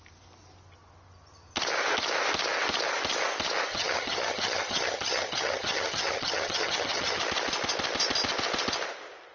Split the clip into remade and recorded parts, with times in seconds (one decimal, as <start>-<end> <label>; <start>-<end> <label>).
0.0-3.7 recorded; 3.7-7.2 remade; 7.2-9.3 recorded